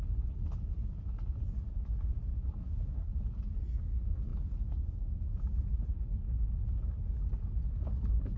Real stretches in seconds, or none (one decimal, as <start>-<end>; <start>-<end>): 0.0-2.6; 3.1-8.4